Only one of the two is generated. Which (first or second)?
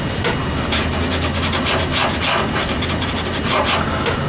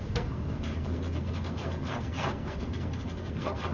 second